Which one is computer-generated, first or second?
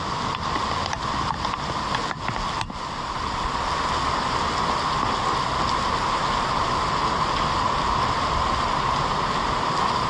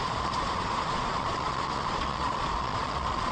second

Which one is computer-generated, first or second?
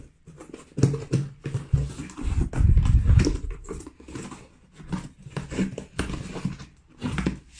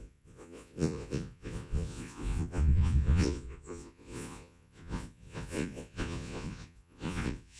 second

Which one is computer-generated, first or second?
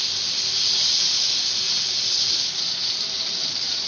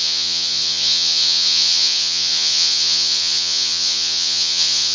second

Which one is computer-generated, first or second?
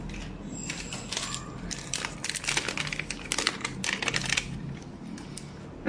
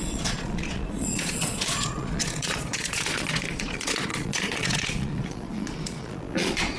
second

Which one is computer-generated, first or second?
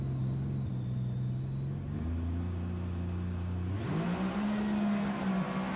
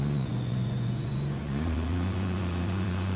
second